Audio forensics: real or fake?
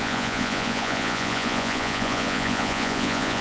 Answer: fake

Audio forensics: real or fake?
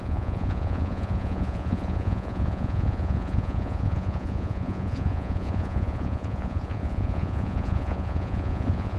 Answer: fake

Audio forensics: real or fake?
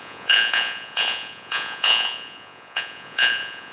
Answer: fake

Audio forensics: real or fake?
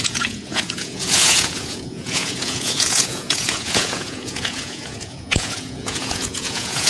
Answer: fake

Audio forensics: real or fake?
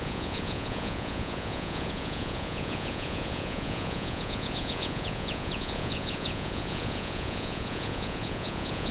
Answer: fake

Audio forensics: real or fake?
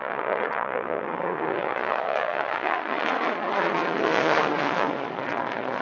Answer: fake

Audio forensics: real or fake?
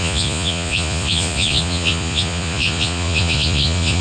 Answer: fake